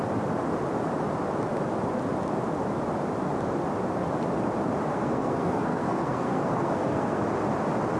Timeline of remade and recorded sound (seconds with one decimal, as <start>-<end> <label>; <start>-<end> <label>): 0.0-4.9 recorded; 4.9-7.2 remade; 7.2-8.0 recorded